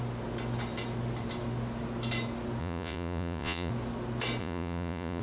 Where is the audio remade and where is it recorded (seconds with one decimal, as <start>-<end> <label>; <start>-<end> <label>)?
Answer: 0.0-2.6 recorded; 2.6-3.7 remade; 3.7-4.4 recorded; 4.4-5.2 remade